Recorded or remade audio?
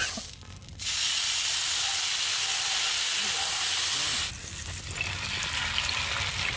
recorded